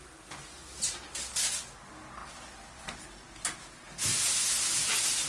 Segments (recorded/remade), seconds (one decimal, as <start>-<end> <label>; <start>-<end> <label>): 0.0-5.3 recorded